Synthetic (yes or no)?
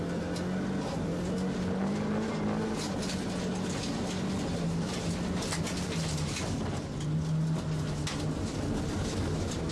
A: no